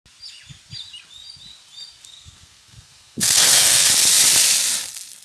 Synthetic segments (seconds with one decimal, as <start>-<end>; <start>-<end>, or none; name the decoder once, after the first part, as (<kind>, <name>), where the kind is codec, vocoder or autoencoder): 2.1-3.9 (codec, SNAC)